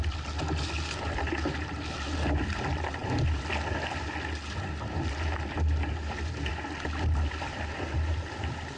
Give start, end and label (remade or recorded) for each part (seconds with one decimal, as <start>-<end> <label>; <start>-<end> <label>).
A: 0.0-8.8 recorded